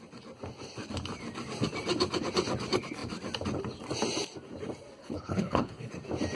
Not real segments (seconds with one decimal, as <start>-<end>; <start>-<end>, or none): 5.0-5.9